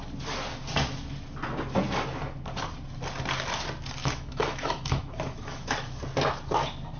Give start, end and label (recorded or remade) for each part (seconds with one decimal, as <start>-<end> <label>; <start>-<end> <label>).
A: 0.0-4.0 recorded; 4.0-6.0 remade; 6.0-7.0 recorded

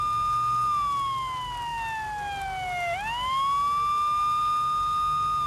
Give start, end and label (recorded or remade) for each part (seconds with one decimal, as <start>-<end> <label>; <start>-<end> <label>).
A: 0.0-5.5 recorded

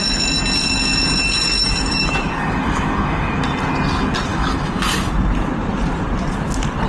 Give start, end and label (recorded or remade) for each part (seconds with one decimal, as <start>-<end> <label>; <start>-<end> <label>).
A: 0.0-1.6 recorded; 1.6-3.4 remade; 3.4-4.3 recorded; 4.3-5.1 remade; 5.1-6.9 recorded

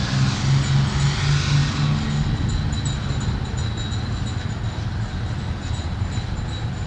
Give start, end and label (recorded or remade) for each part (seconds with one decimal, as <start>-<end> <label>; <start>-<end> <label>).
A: 0.0-6.9 recorded

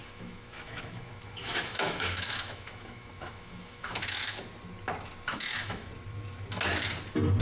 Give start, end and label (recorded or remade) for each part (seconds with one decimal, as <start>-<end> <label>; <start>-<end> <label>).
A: 0.0-4.4 remade; 4.4-5.3 recorded; 5.3-5.9 remade; 5.9-7.4 recorded

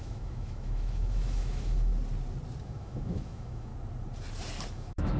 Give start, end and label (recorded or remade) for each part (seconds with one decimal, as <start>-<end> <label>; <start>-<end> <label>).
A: 0.0-1.9 remade; 1.9-2.6 recorded; 2.6-3.7 remade; 3.7-4.7 recorded; 4.7-5.2 remade